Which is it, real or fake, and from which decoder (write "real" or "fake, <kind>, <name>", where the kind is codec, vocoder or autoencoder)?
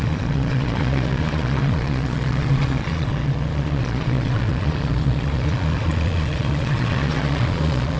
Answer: fake, vocoder, Vocos